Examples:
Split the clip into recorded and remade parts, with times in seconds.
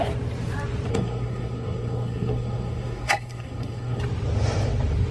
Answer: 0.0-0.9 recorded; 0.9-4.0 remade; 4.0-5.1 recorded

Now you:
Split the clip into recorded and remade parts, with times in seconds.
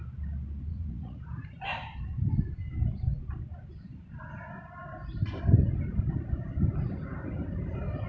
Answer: 0.0-0.7 recorded; 0.7-1.2 remade; 1.2-8.1 recorded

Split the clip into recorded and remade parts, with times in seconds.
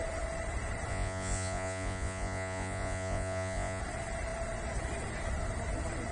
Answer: 0.0-0.9 recorded; 0.9-3.8 remade; 3.8-6.1 recorded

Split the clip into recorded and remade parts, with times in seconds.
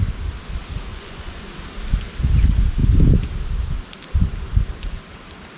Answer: 0.0-0.9 recorded; 0.9-1.4 remade; 1.4-5.6 recorded